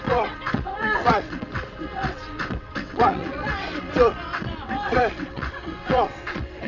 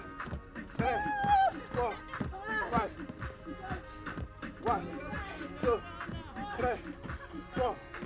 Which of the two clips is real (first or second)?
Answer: second